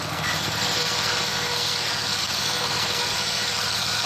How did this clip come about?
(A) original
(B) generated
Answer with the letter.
B